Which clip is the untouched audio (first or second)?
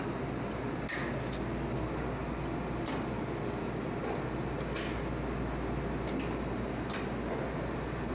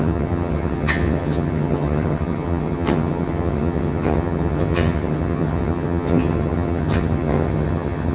first